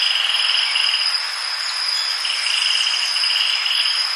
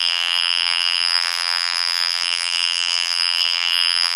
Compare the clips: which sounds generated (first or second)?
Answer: second